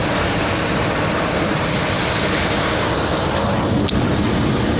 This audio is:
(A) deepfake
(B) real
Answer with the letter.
B